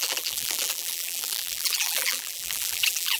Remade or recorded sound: remade